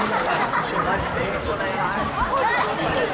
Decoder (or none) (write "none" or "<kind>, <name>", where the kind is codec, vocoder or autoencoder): none